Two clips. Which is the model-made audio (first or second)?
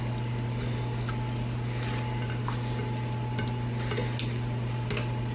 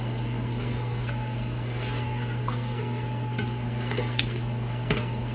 second